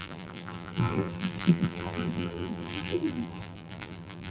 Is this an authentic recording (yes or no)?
no